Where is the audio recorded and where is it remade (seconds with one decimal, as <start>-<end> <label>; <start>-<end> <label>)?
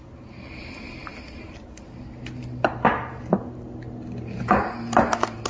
0.0-5.5 recorded